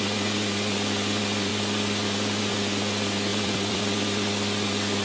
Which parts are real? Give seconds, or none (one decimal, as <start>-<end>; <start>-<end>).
0.0-3.3; 3.8-5.0